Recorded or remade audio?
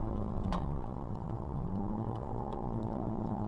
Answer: remade